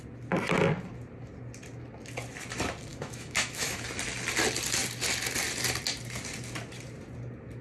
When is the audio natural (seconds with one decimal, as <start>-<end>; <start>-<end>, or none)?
0.0-2.9; 3.8-7.6